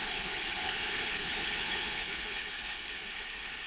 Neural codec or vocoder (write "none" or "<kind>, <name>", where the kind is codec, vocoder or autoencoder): codec, HILCodec